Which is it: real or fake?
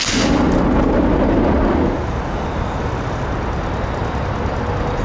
real